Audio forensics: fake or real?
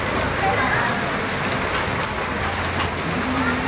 real